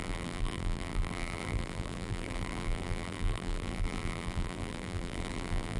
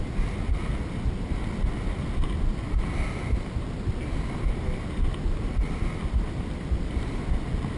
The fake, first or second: first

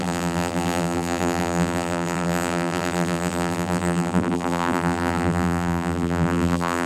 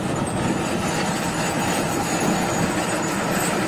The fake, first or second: first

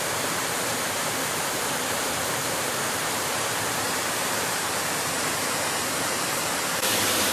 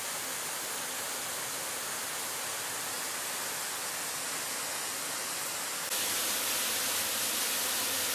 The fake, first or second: first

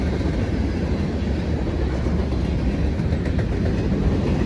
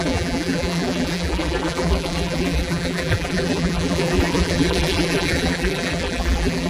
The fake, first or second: second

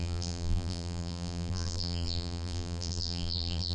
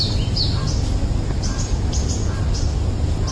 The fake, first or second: first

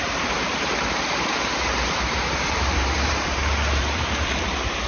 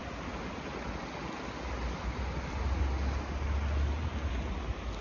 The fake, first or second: first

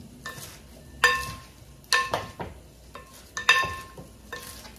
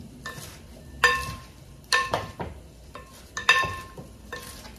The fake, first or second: second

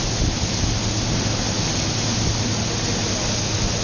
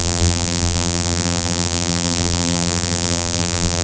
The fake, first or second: second